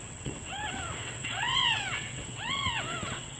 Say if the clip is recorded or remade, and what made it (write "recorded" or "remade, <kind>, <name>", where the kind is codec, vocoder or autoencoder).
remade, vocoder, WaveNeXt